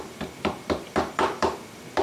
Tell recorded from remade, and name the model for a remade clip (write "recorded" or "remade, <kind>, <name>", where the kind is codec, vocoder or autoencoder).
remade, vocoder, BigVGAN v2